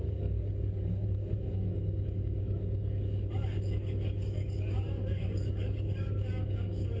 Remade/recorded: remade